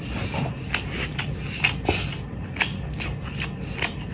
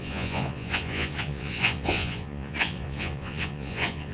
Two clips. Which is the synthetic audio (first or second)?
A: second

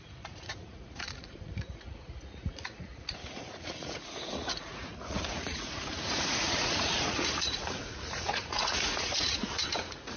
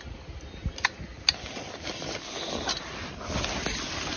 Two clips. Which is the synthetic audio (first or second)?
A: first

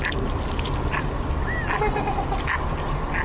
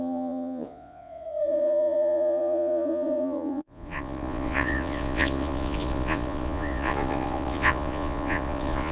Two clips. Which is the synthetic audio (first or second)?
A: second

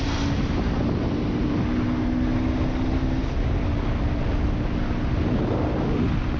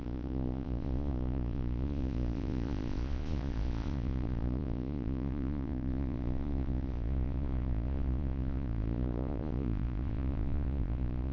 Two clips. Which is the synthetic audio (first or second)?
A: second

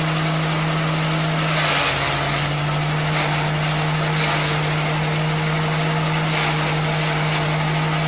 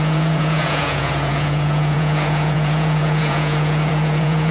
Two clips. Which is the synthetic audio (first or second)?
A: second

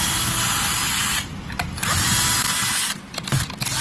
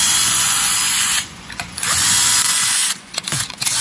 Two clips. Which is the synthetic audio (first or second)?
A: second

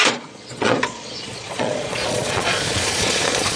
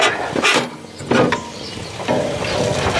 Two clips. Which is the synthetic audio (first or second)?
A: first